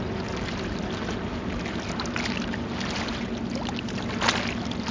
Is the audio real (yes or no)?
yes